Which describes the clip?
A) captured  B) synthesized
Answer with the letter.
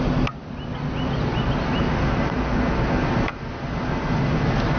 A